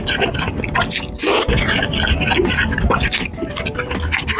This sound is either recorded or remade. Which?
recorded